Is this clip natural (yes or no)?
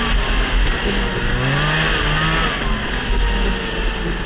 yes